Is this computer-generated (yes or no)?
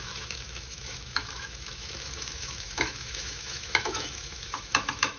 yes